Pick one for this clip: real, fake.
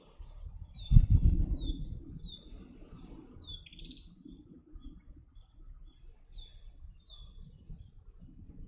real